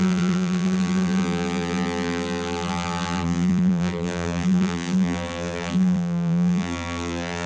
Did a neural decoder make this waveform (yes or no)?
yes